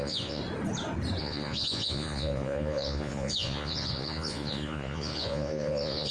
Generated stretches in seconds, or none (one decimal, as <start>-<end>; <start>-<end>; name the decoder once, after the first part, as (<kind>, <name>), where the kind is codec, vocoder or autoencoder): 0.0-0.4 (vocoder, Vocos); 1.2-6.1